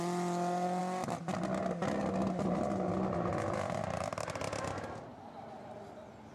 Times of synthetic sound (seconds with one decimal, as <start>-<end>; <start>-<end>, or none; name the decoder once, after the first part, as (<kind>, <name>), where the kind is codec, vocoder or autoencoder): none